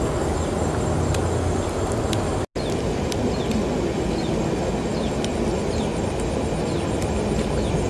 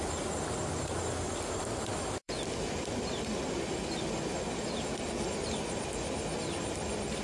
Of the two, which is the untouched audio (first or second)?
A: first